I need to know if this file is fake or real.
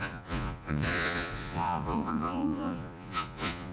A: fake